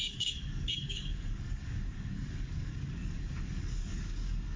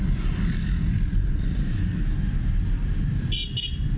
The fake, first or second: first